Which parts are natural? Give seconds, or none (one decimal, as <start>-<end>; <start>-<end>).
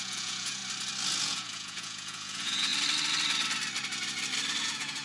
0.6-1.2; 2.7-4.6